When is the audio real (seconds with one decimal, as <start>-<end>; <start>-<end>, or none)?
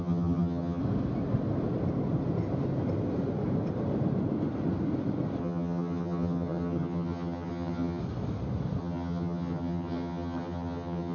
0.8-5.4; 8.0-8.8